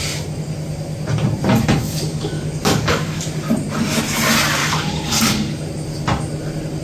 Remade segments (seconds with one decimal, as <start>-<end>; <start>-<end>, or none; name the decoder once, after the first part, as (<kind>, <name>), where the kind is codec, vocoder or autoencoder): 1.8-3.2 (codec, DAC); 4.6-5.7